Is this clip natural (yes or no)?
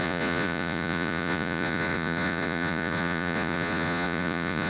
no